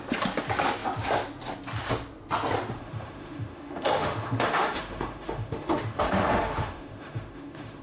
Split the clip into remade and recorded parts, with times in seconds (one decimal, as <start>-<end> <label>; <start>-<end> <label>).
0.0-2.8 recorded; 2.8-7.8 remade